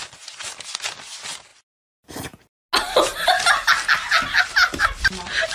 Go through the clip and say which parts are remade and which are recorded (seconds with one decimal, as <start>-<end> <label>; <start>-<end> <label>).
0.0-5.5 recorded